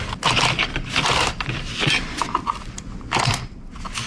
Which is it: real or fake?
real